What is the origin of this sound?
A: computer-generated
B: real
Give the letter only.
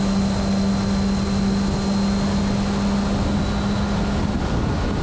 B